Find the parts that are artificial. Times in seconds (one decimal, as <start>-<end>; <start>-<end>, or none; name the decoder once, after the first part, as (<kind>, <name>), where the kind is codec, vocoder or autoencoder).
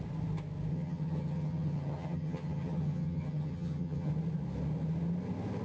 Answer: 0.7-4.1 (vocoder, HiFi-GAN)